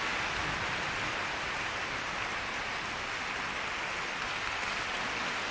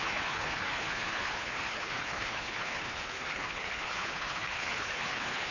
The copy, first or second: second